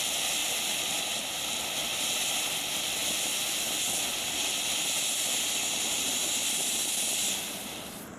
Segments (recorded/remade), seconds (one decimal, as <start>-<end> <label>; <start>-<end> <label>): 0.0-6.4 recorded; 6.4-7.0 remade; 7.0-8.2 recorded